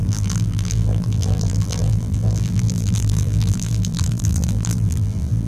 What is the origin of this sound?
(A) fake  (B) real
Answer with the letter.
A